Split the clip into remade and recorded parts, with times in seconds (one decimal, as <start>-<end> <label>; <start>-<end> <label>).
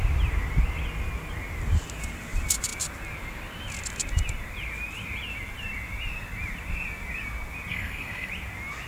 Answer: 0.0-7.7 recorded; 7.7-8.3 remade; 8.3-8.9 recorded